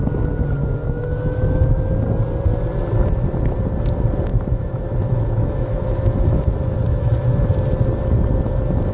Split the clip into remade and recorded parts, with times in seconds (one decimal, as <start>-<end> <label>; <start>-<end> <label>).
0.0-0.8 recorded; 0.8-1.9 remade; 1.9-4.3 recorded; 4.3-7.4 remade; 7.4-8.9 recorded